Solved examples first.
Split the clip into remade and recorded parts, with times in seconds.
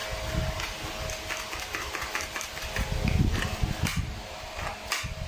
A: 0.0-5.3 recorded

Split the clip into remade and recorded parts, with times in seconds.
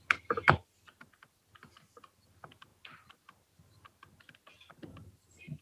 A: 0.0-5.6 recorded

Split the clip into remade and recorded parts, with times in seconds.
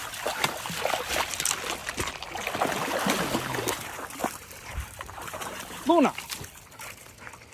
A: 0.0-4.2 recorded; 4.2-5.9 remade; 5.9-7.5 recorded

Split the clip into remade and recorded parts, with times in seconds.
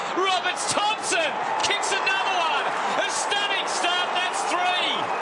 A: 0.0-1.6 recorded; 1.6-2.3 remade; 2.3-5.2 recorded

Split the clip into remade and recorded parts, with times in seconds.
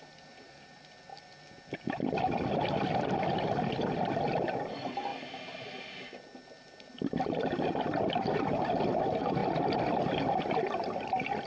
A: 0.0-1.1 remade; 1.1-2.6 recorded; 2.6-5.1 remade; 5.1-7.1 recorded; 7.1-9.4 remade; 9.4-10.6 recorded; 10.6-11.5 remade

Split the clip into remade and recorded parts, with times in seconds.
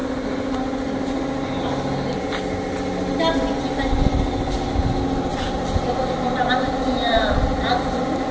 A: 0.0-5.3 recorded; 5.3-8.3 remade